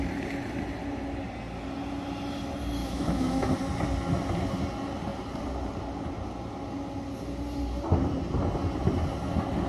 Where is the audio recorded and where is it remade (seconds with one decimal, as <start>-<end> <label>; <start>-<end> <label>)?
0.0-2.8 recorded; 2.8-3.5 remade; 3.5-9.7 recorded